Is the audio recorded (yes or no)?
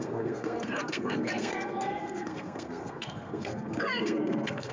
no